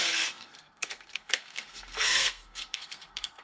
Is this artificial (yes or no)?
yes